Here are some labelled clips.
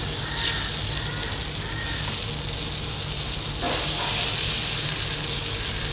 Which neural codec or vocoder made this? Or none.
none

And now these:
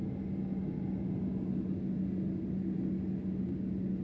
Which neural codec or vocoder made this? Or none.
none